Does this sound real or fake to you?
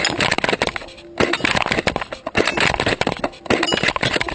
real